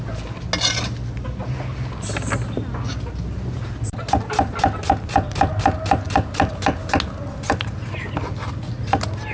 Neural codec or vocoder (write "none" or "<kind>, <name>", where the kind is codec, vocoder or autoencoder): none